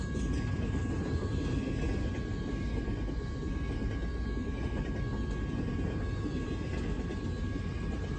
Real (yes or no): yes